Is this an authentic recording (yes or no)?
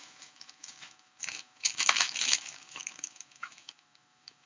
no